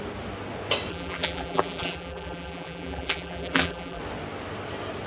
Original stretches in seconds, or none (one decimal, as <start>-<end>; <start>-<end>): 0.0-0.9; 4.0-5.1